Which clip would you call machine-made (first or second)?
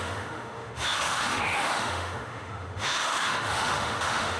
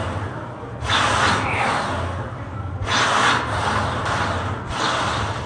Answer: first